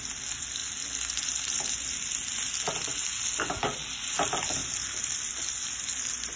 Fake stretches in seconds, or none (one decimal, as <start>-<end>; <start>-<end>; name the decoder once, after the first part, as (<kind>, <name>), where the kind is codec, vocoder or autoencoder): none